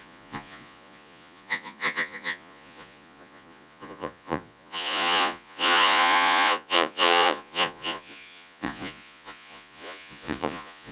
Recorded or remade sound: remade